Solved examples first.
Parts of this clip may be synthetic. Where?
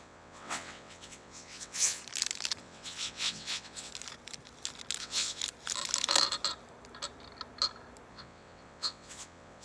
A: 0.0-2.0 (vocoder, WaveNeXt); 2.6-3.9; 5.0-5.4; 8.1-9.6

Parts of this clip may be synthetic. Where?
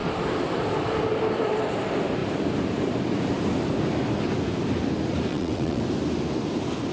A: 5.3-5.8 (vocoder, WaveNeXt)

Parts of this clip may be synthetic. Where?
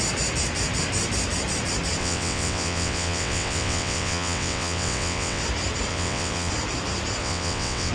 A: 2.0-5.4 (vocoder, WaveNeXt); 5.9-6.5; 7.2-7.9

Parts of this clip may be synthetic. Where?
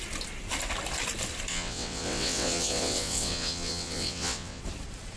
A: 1.5-4.6 (vocoder, WaveNeXt)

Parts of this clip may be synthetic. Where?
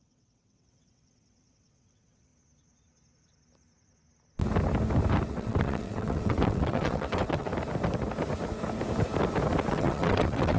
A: 0.0-2.3 (vocoder, WaveNeXt); 5.3-7.5; 9.7-10.6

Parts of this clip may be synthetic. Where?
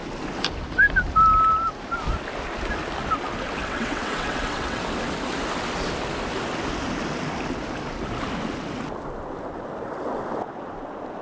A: 3.6-4.8 (vocoder, WaveNeXt)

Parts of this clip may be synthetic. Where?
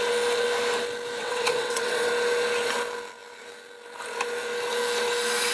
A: 1.2-2.1 (vocoder, WaveNeXt)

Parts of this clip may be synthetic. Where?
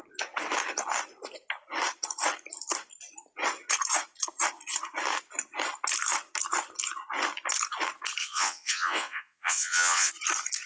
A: 8.2-10.1 (vocoder, WaveNeXt)